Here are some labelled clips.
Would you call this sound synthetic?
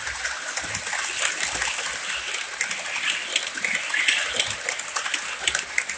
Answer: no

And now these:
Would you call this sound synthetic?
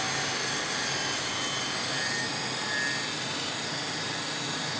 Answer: no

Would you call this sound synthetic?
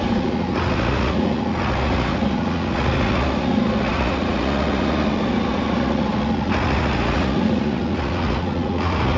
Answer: yes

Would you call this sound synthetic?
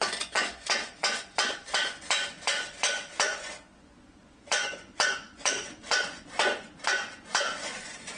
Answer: yes